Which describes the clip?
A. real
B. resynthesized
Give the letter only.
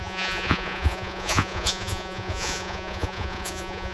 B